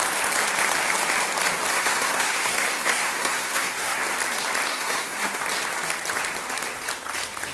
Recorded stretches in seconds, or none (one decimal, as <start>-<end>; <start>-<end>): 0.0-1.7; 4.0-4.7; 5.4-7.5